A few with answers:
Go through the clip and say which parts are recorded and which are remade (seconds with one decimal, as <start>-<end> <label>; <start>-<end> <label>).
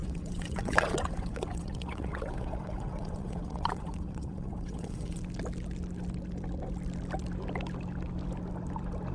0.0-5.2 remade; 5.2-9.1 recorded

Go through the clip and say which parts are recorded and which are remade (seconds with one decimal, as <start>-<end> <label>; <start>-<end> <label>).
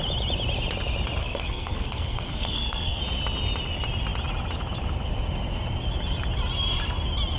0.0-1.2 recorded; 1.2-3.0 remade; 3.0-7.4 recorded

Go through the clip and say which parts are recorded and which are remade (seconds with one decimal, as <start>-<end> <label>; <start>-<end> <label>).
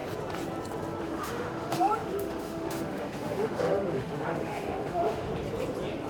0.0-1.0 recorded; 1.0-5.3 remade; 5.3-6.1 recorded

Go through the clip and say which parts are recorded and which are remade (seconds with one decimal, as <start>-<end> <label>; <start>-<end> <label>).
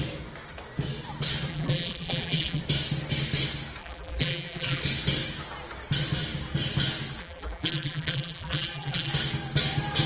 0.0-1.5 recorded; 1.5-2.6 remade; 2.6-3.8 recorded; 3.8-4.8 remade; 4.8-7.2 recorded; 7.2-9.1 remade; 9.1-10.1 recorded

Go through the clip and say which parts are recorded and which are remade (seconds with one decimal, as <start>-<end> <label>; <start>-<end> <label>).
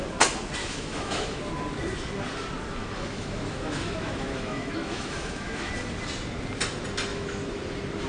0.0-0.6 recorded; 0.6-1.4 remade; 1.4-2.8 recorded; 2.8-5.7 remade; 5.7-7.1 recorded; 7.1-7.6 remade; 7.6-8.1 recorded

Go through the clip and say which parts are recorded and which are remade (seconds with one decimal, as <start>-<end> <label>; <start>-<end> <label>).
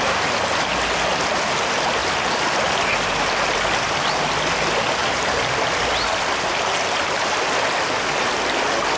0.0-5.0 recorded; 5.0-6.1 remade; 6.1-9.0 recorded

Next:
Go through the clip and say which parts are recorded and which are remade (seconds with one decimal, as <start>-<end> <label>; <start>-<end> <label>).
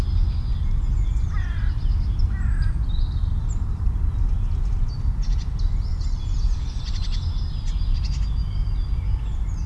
0.0-9.7 recorded